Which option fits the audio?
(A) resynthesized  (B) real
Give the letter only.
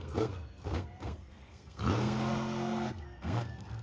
A